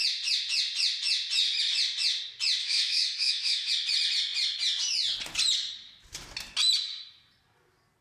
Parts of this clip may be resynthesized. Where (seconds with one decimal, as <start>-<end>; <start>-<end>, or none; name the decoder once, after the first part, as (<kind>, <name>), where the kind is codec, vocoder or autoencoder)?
2.6-3.7 (autoencoder, DAC-VAE)